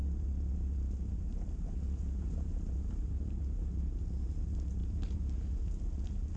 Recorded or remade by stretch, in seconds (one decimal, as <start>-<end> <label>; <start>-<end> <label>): 0.0-6.4 recorded